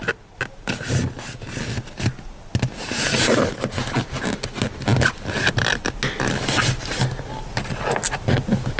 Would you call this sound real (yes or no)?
yes